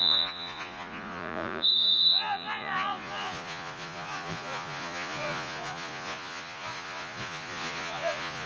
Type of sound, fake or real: fake